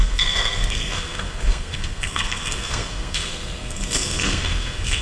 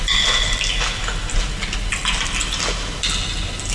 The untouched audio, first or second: second